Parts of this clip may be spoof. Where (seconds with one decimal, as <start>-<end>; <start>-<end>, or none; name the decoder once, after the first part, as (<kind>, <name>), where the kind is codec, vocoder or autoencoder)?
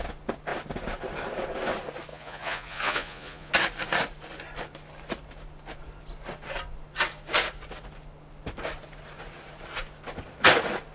2.1-3.5 (vocoder, Vocos)